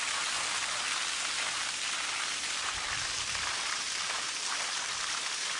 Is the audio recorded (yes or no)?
yes